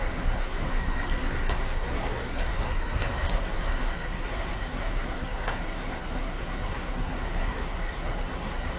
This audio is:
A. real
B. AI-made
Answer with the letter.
B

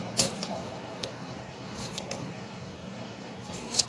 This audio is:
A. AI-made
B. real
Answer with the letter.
A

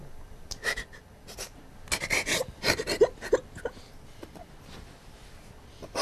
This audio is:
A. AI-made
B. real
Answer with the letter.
B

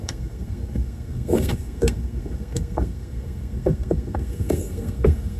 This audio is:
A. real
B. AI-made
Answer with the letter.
B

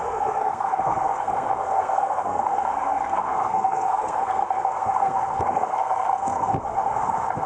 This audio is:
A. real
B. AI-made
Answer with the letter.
B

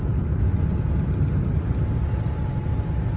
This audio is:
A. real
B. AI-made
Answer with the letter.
A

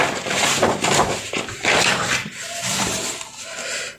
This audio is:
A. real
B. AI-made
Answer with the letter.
A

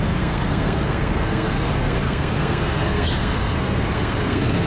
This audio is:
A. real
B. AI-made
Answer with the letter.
B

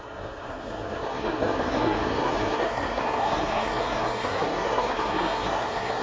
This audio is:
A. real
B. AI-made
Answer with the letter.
B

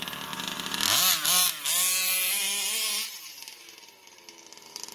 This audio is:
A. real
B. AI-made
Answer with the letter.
A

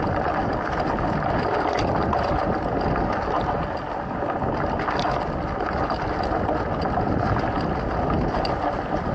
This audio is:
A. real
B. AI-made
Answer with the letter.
A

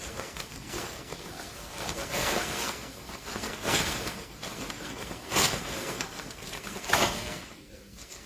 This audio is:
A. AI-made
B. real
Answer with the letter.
A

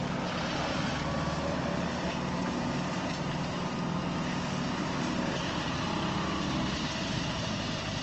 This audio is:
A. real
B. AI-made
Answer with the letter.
A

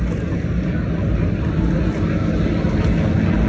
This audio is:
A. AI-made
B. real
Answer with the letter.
B